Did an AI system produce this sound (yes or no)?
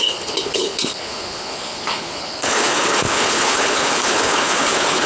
yes